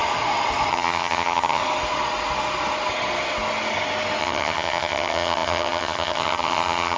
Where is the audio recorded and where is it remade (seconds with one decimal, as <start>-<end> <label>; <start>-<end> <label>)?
0.0-0.7 recorded; 0.7-1.6 remade; 1.6-4.2 recorded; 4.2-7.0 remade